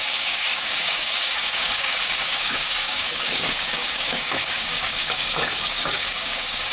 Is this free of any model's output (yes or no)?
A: no